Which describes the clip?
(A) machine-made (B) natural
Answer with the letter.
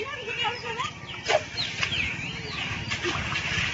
B